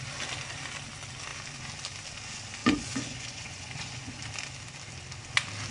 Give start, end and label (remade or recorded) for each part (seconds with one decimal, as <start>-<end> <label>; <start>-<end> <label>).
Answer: 0.0-2.6 recorded; 2.6-4.3 remade; 4.3-5.7 recorded